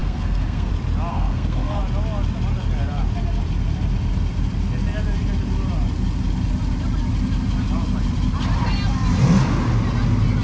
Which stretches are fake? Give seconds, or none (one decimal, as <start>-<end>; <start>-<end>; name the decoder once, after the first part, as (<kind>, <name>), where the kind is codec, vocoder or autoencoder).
0.0-0.7 (codec, SNAC); 1.1-1.8